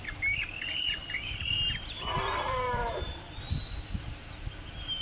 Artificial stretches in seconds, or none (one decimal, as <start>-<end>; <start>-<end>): 1.0-3.4